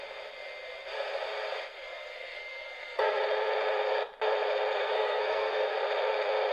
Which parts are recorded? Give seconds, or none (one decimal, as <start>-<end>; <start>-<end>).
0.0-1.7; 3.2-4.8; 5.8-6.5